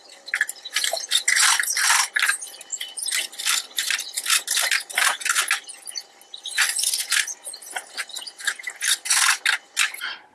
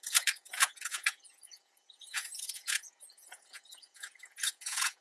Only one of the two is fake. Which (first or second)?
second